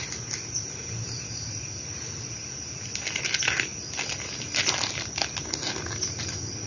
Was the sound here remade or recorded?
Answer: recorded